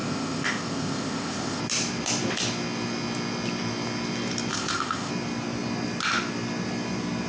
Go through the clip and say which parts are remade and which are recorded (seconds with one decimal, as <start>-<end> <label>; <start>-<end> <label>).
0.0-1.6 remade; 1.6-4.5 recorded; 4.5-5.1 remade; 5.1-7.3 recorded